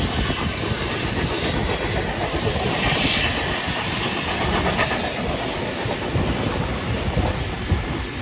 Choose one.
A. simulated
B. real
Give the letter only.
B